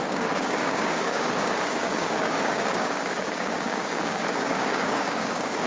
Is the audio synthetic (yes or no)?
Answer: yes